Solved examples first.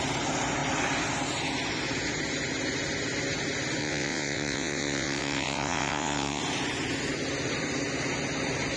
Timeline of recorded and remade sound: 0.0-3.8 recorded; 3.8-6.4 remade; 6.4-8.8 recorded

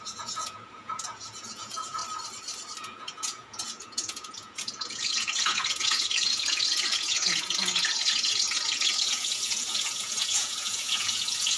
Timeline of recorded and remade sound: 0.0-2.0 remade; 2.0-2.8 recorded; 2.8-11.6 remade

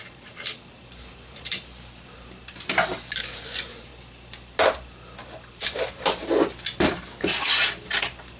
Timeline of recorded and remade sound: 0.0-3.9 remade; 3.9-5.6 recorded; 5.6-6.2 remade; 6.2-6.8 recorded; 6.8-7.3 remade; 7.3-8.0 recorded; 8.0-8.4 remade

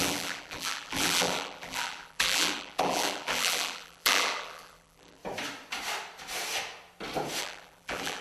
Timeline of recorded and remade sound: 0.0-5.2 remade; 5.2-7.4 recorded; 7.4-8.2 remade

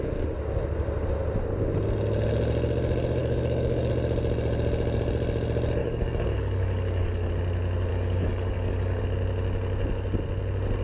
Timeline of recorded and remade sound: 0.0-3.2 recorded; 3.2-3.9 remade; 3.9-5.8 recorded; 5.8-7.3 remade; 7.3-7.9 recorded; 7.9-9.0 remade; 9.0-10.8 recorded

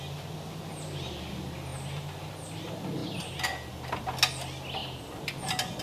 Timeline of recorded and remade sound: 0.0-5.8 recorded